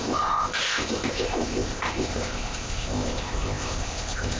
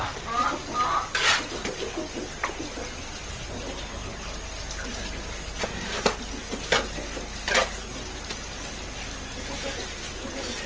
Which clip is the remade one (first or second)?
first